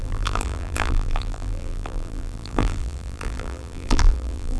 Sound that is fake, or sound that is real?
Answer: fake